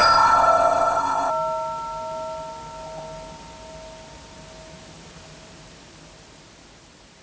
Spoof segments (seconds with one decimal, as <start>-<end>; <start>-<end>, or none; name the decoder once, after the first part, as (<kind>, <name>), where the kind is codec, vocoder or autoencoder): 0.0-1.3 (codec, ZipCodec)